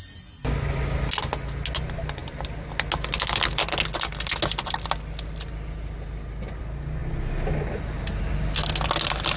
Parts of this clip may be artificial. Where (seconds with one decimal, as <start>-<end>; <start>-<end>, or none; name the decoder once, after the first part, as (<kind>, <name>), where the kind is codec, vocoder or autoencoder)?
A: none